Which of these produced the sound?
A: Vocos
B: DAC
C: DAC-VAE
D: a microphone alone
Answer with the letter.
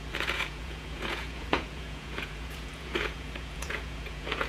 A